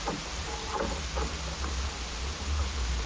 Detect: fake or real real